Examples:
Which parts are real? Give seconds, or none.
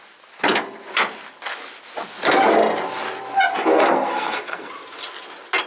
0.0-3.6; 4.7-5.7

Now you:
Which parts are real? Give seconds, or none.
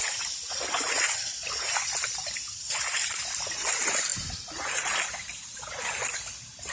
0.0-6.7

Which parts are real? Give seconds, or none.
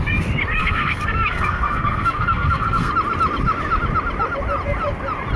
0.0-0.6; 2.9-5.4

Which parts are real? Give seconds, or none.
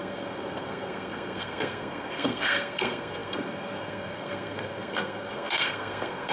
none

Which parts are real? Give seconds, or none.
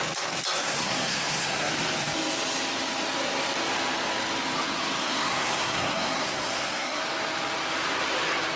0.0-0.6; 1.7-5.0; 7.0-8.6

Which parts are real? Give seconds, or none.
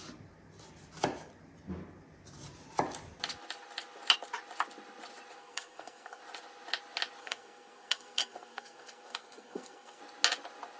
0.0-5.4; 6.2-7.2; 10.0-10.8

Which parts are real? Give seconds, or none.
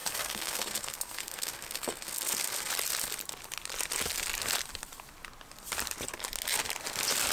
2.7-7.3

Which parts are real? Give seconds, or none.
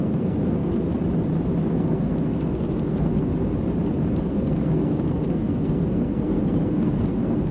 0.9-1.7; 3.3-4.2